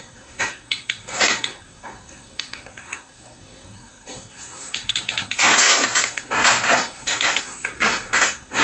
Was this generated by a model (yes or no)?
yes